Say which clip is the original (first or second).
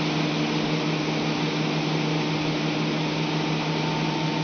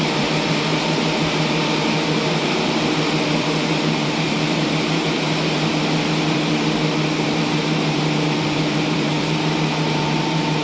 first